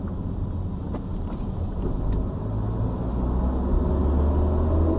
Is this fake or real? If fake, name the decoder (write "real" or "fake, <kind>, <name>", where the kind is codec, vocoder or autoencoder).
real